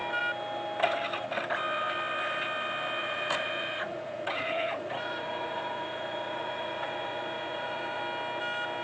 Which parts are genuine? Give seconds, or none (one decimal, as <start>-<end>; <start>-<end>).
0.0-3.0; 8.0-8.8